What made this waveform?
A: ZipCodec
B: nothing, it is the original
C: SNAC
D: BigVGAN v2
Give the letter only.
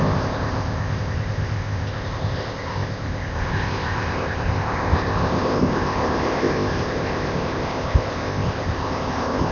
A